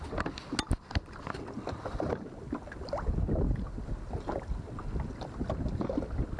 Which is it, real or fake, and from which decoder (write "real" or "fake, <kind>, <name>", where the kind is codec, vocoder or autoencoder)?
real